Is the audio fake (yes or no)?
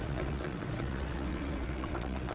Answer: yes